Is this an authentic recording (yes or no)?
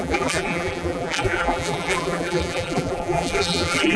no